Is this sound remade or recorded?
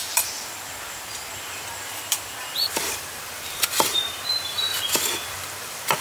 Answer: remade